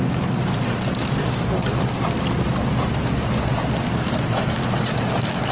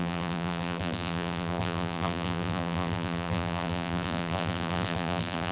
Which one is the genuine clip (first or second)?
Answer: first